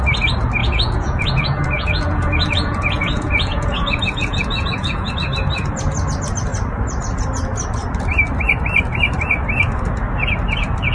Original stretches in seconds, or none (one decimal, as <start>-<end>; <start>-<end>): 0.0-0.6; 5.1-10.9